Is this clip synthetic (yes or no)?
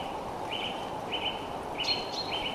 yes